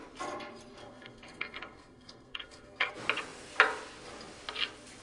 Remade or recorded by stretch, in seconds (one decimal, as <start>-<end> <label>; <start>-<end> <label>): 0.0-0.8 recorded; 0.8-2.9 remade; 2.9-5.0 recorded